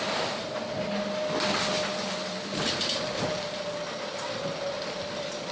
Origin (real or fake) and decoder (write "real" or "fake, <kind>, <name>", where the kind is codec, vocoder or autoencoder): real